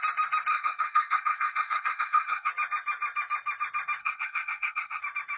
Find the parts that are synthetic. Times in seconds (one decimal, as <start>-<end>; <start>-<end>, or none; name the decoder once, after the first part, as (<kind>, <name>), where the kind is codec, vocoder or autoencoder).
0.5-2.5 (codec, SNAC); 4.0-5.0